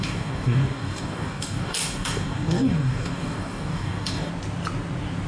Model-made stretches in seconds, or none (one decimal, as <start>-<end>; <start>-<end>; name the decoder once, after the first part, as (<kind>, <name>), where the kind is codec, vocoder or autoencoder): 0.0-4.3 (codec, DAC)